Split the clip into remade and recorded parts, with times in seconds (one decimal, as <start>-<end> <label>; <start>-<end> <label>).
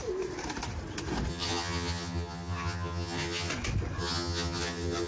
0.0-1.3 recorded; 1.3-3.5 remade; 3.5-4.0 recorded; 4.0-5.1 remade